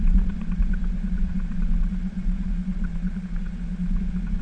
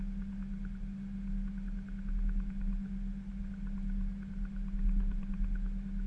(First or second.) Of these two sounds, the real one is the second